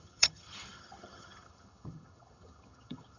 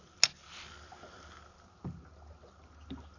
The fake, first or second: first